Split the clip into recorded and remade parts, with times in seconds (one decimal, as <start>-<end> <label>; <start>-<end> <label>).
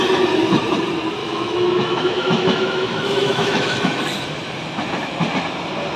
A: 0.0-1.2 recorded; 1.2-4.0 remade; 4.0-6.0 recorded